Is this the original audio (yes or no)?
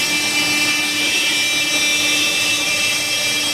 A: yes